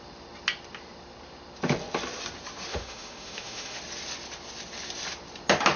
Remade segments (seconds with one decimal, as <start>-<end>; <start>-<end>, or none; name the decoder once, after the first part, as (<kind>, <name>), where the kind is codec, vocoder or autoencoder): 2.7-3.8 (autoencoder, DAC-VAE)